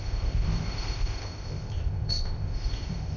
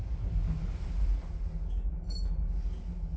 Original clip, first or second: second